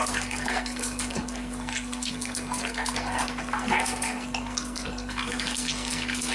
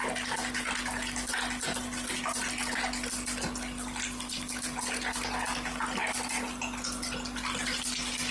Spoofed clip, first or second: first